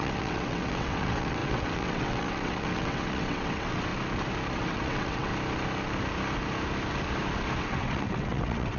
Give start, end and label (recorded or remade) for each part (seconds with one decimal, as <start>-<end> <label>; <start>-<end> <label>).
0.0-3.9 remade; 3.9-4.5 recorded; 4.5-5.3 remade; 5.3-7.6 recorded; 7.6-8.8 remade